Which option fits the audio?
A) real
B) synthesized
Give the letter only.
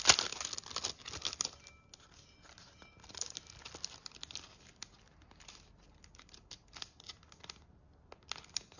A